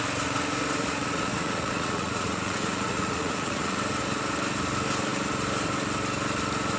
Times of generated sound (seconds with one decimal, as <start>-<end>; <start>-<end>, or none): 0.8-3.8